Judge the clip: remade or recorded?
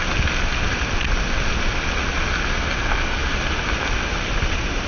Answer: recorded